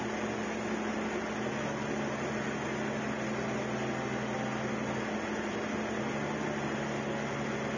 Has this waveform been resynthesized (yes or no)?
no